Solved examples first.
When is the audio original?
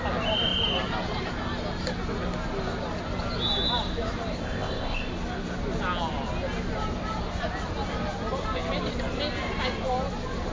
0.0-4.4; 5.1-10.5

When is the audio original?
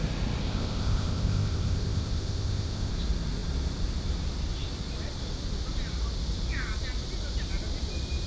0.0-0.4; 2.9-8.3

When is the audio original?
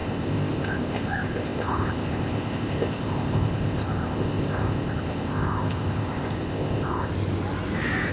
7.1-8.1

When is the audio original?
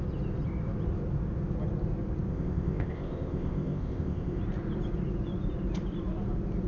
0.0-2.3; 4.4-6.7